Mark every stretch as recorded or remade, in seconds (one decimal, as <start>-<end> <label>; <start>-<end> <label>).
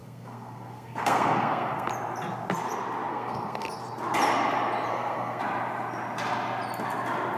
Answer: 0.0-1.9 remade; 1.9-3.1 recorded; 3.1-3.7 remade; 3.7-4.9 recorded; 4.9-5.4 remade; 5.4-7.4 recorded